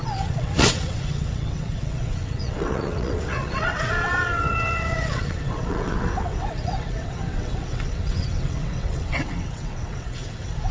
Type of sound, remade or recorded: remade